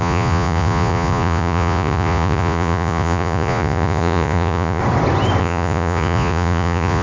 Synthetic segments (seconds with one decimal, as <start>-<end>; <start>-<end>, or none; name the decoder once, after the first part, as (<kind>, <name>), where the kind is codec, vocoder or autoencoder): 0.0-4.8 (vocoder, Vocos); 5.4-7.0